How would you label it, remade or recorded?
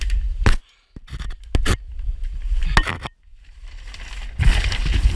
recorded